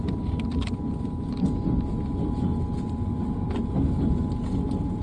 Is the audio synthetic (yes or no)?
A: no